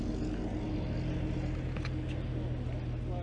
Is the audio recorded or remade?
recorded